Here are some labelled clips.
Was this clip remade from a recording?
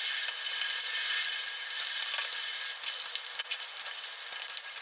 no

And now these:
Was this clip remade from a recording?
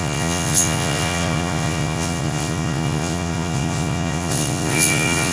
yes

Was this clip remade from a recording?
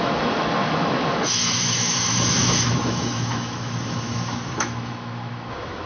yes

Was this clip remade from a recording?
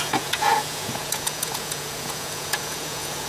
yes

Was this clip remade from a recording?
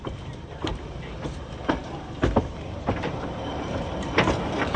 yes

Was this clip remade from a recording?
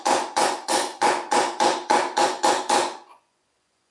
yes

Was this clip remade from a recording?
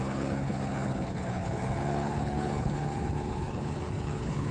yes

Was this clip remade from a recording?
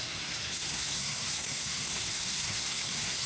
yes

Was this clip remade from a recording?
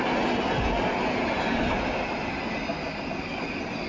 no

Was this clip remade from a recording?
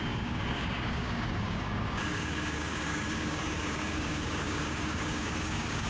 yes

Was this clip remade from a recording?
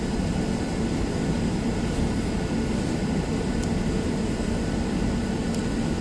no